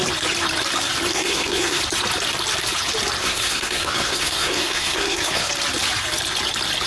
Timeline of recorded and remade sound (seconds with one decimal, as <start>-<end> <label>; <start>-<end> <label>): 0.0-1.1 recorded; 1.1-1.8 remade; 1.8-3.2 recorded; 3.2-5.5 remade; 5.5-6.9 recorded